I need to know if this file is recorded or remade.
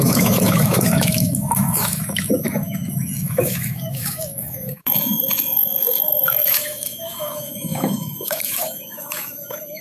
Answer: remade